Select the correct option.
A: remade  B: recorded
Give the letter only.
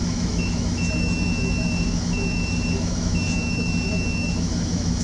A